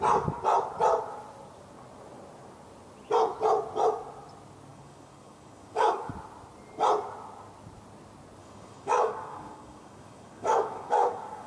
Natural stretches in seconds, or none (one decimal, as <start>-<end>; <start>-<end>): 0.0-4.7; 6.1-8.4